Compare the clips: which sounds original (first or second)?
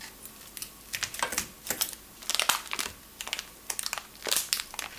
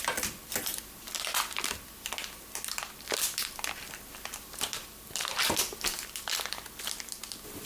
first